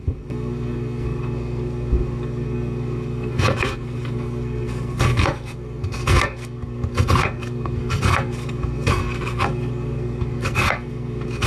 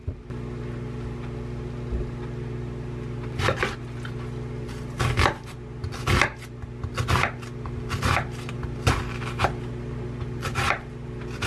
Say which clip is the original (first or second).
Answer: second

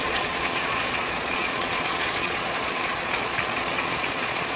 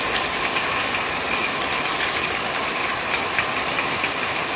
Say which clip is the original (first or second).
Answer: second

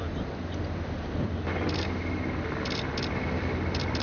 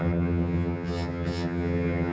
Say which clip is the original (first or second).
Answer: first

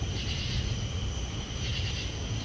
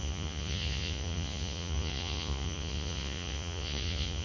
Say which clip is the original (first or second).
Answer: first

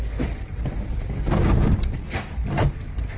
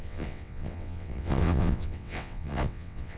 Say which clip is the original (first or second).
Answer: first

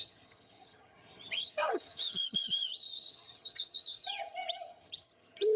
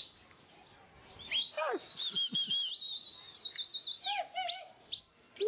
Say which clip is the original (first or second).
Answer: second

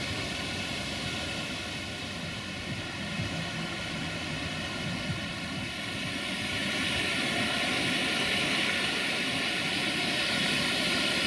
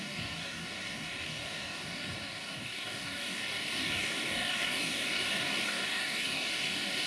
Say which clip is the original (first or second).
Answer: first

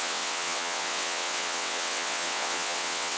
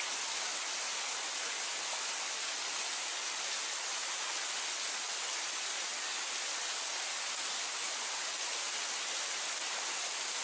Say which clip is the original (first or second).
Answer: second